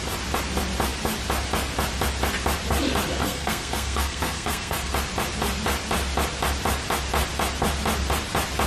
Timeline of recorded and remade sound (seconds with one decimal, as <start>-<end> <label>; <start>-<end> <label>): 0.0-3.2 recorded; 3.2-4.9 remade; 4.9-8.7 recorded